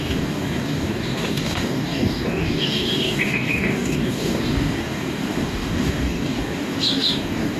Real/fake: fake